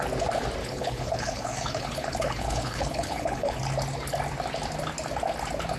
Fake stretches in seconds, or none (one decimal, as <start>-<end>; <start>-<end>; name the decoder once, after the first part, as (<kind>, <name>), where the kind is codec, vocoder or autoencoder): 0.6-3.6 (codec, HILCodec)